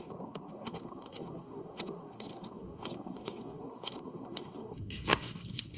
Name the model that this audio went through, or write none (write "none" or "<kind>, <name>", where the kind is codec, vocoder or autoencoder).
codec, SNAC